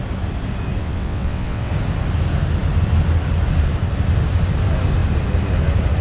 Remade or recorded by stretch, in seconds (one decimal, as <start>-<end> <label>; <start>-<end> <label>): 0.0-0.8 recorded; 0.8-1.7 remade; 1.7-6.0 recorded